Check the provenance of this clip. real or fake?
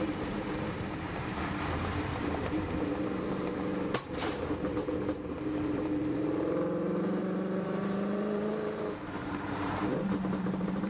fake